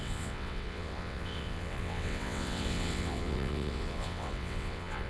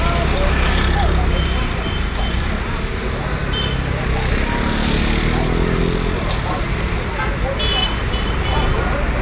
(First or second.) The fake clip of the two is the first